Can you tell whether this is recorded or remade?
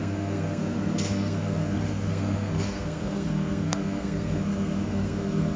remade